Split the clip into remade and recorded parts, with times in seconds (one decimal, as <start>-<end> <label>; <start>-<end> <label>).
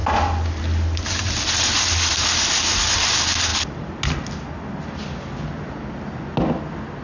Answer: 0.0-7.0 recorded